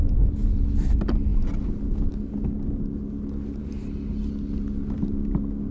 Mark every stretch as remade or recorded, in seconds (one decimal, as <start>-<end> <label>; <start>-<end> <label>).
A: 0.0-5.7 recorded